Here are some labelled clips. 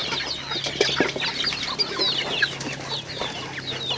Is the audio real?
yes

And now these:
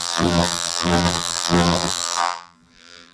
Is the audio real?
no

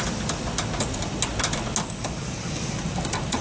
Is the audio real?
yes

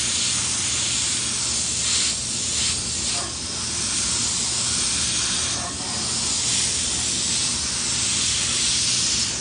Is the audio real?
yes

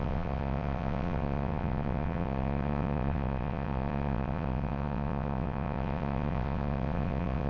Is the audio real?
no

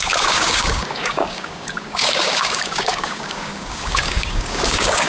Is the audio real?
no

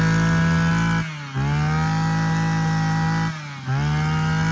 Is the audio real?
yes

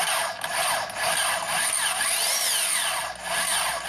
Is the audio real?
yes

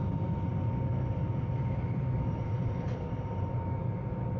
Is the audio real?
yes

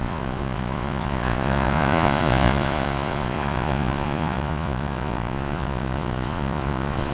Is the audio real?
no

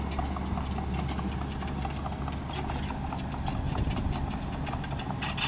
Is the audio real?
yes